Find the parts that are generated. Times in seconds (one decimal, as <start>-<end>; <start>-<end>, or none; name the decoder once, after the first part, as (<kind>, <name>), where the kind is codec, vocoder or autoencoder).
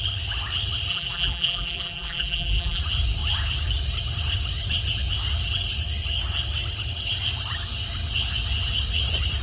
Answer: 0.9-2.8 (vocoder, BigVGAN v2)